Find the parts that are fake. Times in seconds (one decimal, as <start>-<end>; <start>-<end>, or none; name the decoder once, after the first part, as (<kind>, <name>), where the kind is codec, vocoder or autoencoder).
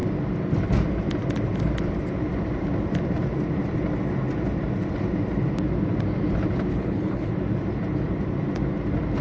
6.7-7.3 (codec, HILCodec)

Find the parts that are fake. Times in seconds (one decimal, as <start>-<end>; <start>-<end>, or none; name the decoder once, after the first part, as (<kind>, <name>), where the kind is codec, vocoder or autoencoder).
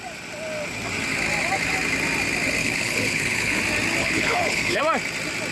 2.6-3.6 (codec, HILCodec); 4.0-4.8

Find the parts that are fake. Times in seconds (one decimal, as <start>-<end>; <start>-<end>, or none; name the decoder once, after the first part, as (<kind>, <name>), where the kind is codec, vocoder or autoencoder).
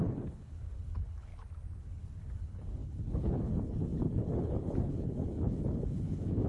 0.0-1.3 (codec, HILCodec); 1.8-6.5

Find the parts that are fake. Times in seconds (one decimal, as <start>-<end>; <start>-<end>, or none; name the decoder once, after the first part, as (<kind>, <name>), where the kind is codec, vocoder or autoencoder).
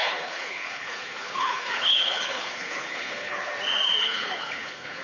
0.0-3.5 (codec, HILCodec); 4.0-5.0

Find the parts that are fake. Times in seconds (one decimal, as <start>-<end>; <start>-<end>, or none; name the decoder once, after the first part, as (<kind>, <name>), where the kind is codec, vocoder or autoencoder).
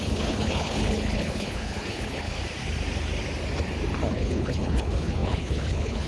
0.0-2.4 (codec, HILCodec); 4.1-6.1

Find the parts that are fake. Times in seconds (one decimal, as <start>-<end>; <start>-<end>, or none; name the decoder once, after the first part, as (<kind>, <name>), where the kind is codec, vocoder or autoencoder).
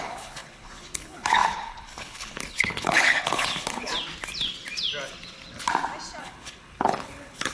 0.0-3.9 (codec, HILCodec); 6.2-7.5